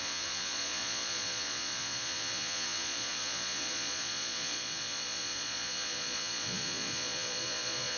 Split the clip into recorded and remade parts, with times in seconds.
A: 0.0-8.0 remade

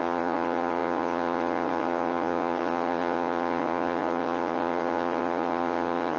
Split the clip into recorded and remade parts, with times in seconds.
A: 0.0-6.2 remade

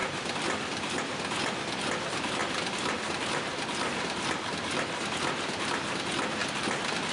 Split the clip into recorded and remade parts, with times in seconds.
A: 0.0-2.4 remade; 2.4-5.7 recorded; 5.7-6.4 remade; 6.4-7.1 recorded

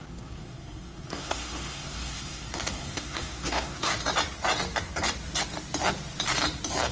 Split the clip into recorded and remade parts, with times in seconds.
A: 0.0-3.9 remade; 3.9-6.9 recorded

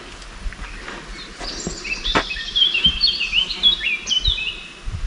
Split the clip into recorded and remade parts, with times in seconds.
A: 0.0-1.1 recorded; 1.1-4.2 remade; 4.2-5.1 recorded

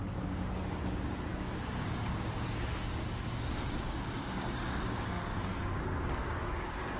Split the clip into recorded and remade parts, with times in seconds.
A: 0.0-7.0 remade

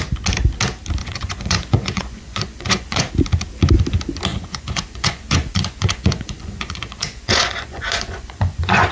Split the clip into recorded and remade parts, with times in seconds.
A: 0.0-1.0 recorded; 1.0-3.1 remade; 3.1-4.3 recorded; 4.3-8.9 remade